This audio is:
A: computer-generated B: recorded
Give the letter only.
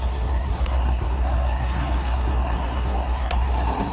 A